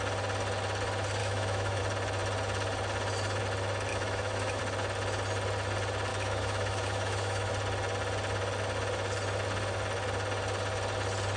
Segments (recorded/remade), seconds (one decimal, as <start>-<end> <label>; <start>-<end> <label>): 0.0-1.2 recorded; 1.2-1.8 remade; 1.8-3.9 recorded; 3.9-4.6 remade; 4.6-6.1 recorded; 6.1-7.5 remade; 7.5-11.4 recorded

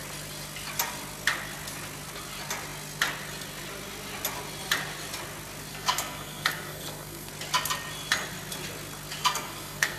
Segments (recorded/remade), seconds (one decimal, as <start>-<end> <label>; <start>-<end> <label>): 0.0-5.7 recorded; 5.7-7.3 remade; 7.3-9.2 recorded; 9.2-10.0 remade